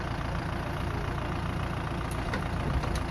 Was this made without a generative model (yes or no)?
yes